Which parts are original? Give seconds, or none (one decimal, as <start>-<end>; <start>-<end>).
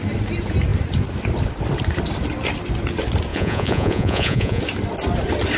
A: 0.0-3.3; 4.6-5.6